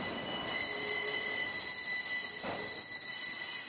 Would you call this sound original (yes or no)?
yes